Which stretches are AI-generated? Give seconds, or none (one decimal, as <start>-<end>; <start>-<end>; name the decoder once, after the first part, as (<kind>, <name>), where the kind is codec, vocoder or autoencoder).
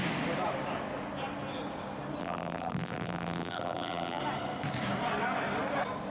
2.2-4.2 (vocoder, BigVGAN v2)